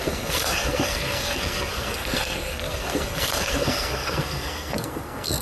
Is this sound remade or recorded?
remade